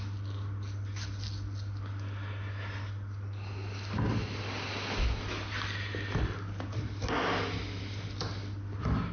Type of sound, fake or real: real